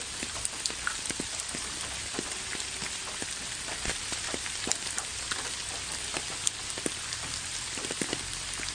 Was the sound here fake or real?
real